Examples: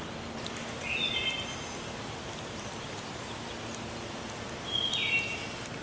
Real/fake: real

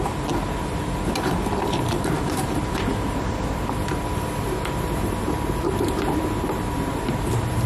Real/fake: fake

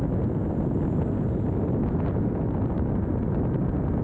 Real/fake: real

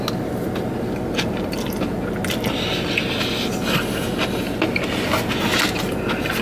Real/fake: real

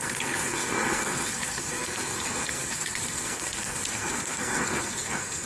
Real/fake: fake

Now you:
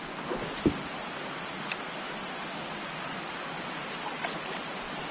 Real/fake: real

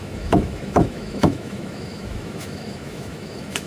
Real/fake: fake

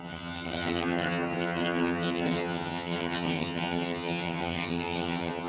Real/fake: fake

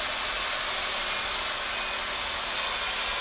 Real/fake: real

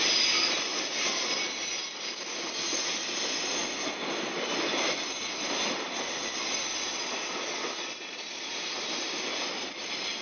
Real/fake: real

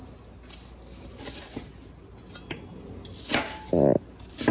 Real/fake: real